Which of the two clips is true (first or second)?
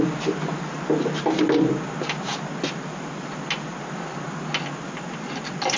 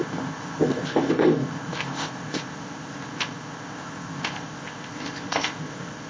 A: first